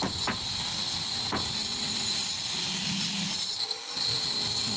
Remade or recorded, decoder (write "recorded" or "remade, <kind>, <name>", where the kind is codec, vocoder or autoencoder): recorded